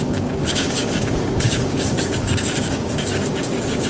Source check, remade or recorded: remade